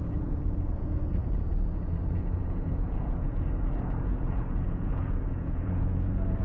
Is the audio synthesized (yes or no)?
yes